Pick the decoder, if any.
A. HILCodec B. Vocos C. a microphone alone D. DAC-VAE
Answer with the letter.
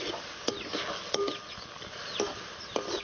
C